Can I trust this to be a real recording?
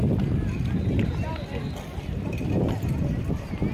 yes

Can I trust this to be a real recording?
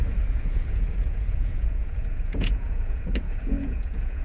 no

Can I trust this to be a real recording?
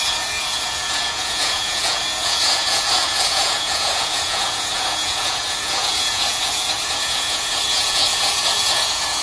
no